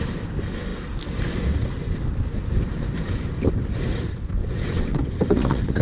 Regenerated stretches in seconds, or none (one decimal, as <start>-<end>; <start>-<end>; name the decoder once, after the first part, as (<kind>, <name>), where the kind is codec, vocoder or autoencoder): 4.4-5.8 (vocoder, WaveNeXt)